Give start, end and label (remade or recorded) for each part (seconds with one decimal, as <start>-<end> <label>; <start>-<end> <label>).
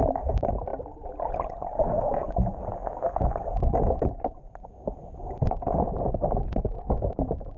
0.0-0.7 remade; 0.7-4.0 recorded; 4.0-5.0 remade; 5.0-7.1 recorded; 7.1-7.6 remade